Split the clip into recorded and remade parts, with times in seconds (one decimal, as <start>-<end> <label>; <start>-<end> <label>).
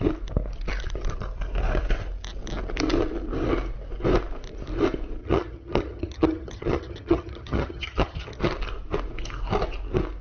0.0-5.2 recorded; 5.2-8.4 remade; 8.4-10.2 recorded